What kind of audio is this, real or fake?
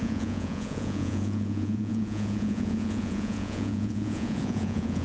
fake